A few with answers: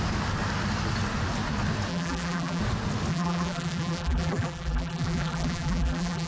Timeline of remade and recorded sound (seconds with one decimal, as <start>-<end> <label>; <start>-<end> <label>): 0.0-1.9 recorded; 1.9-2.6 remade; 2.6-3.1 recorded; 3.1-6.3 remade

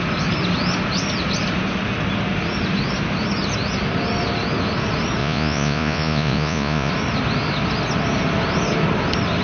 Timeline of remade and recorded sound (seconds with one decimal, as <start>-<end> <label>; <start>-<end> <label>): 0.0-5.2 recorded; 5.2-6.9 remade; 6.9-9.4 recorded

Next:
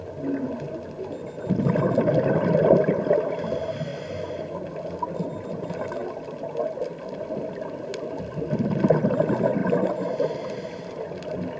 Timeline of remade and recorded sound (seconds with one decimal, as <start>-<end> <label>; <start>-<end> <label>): 0.0-11.6 recorded

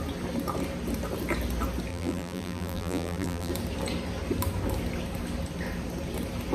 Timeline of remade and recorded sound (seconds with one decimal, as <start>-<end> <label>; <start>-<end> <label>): 0.0-1.9 recorded; 1.9-3.5 remade; 3.5-6.5 recorded

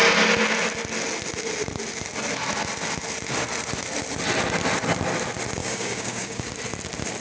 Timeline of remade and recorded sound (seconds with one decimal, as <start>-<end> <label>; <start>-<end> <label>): 0.0-5.6 recorded; 5.6-6.5 remade; 6.5-7.2 recorded

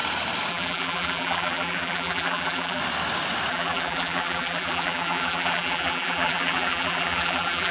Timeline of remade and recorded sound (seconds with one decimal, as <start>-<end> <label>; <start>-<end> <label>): 0.0-0.5 recorded; 0.5-2.8 remade; 2.8-3.5 recorded; 3.5-7.7 remade

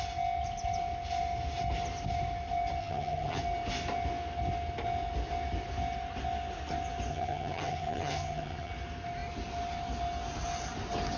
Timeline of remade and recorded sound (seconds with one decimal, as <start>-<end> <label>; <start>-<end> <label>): 0.0-2.8 recorded; 2.8-3.4 remade; 3.4-7.1 recorded; 7.1-8.7 remade; 8.7-11.2 recorded

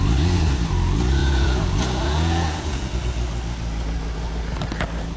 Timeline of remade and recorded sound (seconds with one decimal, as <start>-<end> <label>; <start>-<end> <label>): 0.0-1.2 recorded; 1.2-2.8 remade; 2.8-5.2 recorded